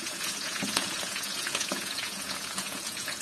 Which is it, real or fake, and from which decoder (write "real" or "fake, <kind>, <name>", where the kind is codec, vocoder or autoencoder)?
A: fake, vocoder, Vocos